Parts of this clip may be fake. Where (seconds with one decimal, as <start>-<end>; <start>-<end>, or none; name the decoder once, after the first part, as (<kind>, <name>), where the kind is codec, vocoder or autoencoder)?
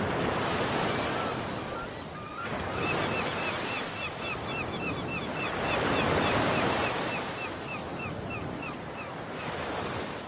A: 0.0-10.3 (vocoder, BigVGAN v2)